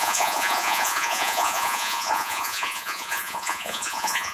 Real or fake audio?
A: fake